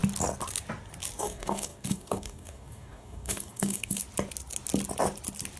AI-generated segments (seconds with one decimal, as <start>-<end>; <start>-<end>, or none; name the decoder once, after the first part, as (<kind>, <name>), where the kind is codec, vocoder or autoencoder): 1.2-4.0 (codec, DAC)